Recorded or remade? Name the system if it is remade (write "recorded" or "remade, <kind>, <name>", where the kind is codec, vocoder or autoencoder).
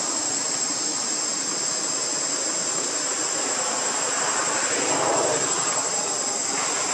recorded